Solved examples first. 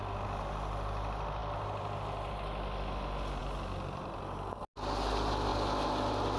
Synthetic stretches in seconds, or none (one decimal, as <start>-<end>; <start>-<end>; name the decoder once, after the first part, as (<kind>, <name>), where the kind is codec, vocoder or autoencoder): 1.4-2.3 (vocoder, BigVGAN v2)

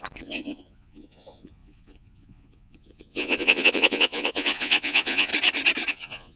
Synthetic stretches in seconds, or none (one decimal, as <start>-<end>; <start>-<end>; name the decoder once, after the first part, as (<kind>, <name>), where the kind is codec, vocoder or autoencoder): 0.0-5.3 (vocoder, Vocos); 5.9-6.4

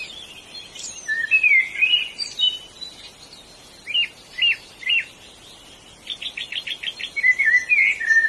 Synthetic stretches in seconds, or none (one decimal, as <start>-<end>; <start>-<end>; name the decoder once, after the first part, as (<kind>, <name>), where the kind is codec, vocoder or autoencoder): 0.0-2.0 (vocoder, BigVGAN v2); 4.9-8.3

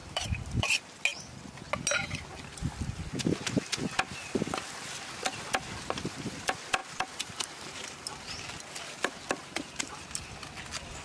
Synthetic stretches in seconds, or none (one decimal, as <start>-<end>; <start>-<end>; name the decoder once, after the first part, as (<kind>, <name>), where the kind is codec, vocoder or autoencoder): 0.0-0.7 (vocoder, BigVGAN v2); 6.8-8.4; 9.4-10.0